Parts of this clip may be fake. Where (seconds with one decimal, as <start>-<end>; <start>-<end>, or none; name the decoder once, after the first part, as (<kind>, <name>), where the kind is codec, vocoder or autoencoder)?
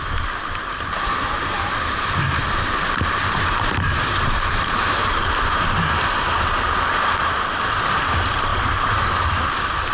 2.4-6.9 (vocoder, BigVGAN v2)